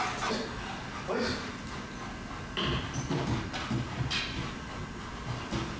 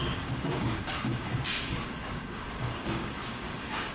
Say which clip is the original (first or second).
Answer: first